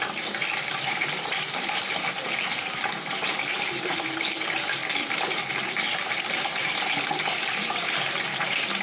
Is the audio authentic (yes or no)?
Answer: no